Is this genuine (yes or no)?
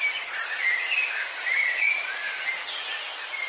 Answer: yes